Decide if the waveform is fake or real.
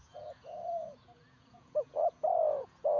fake